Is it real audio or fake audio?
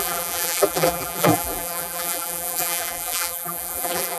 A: fake